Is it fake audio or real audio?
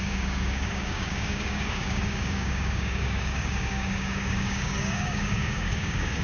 fake